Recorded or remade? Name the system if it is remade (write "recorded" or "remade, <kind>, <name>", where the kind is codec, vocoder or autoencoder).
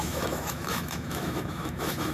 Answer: remade, autoencoder, DAC-VAE